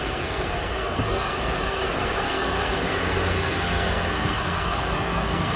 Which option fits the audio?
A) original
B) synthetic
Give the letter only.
B